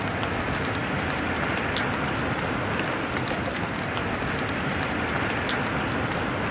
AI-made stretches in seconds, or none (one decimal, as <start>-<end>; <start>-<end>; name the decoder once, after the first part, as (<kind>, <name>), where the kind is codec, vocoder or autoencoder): none